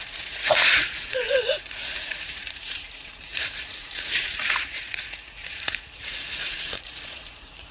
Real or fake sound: fake